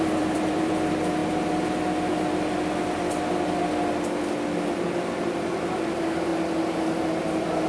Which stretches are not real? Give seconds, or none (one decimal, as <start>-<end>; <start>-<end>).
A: 0.0-1.2; 5.8-6.3